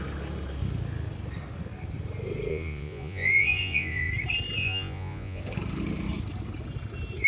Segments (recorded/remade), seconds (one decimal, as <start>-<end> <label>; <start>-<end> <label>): 0.0-2.5 recorded; 2.5-4.1 remade; 4.1-4.6 recorded; 4.6-5.4 remade; 5.4-7.3 recorded